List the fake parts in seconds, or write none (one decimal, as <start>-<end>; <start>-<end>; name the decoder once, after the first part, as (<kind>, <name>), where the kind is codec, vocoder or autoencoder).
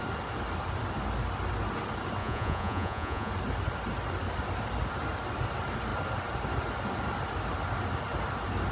2.2-3.3 (vocoder, Vocos)